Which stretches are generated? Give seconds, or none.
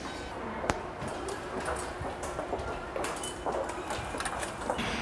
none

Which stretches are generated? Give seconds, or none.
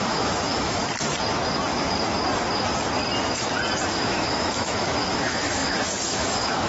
0.0-0.8 (autoencoder, DAC-VAE); 3.9-6.7